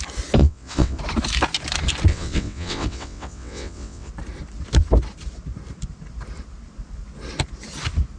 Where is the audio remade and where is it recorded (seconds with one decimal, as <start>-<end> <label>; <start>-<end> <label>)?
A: 0.0-0.4 recorded; 0.4-1.0 remade; 1.0-2.1 recorded; 2.1-4.1 remade; 4.1-8.2 recorded